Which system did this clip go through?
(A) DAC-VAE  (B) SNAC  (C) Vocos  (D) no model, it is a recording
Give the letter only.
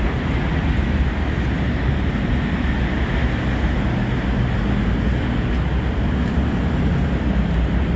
D